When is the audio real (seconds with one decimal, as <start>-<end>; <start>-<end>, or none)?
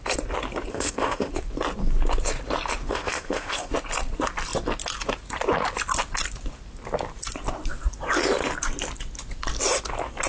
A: 0.0-0.7; 1.3-2.9; 3.7-10.3